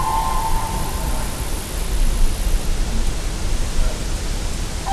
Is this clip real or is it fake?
real